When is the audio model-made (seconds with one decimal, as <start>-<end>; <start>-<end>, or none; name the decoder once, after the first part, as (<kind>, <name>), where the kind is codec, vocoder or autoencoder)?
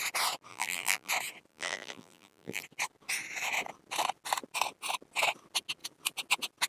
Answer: 0.5-1.1 (vocoder, BigVGAN v2); 1.5-2.6